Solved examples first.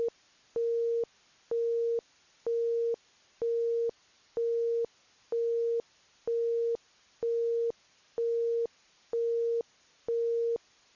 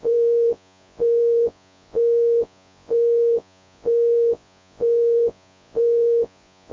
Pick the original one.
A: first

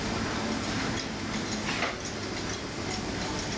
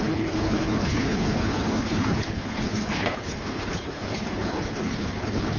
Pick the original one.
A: first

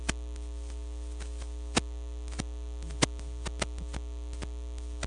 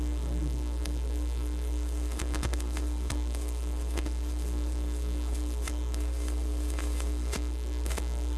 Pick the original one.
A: first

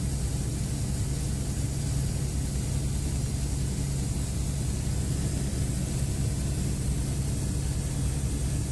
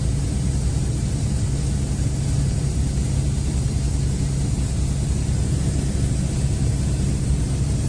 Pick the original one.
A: first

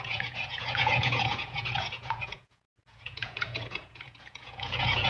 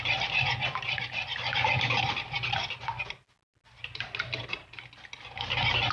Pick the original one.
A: second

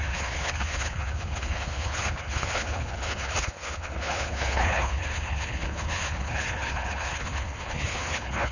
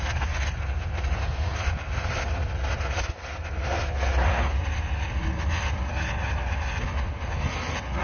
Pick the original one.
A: second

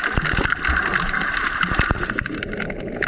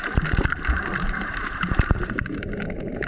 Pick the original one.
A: first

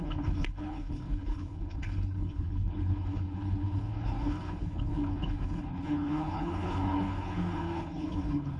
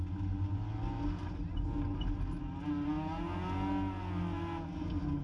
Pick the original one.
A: second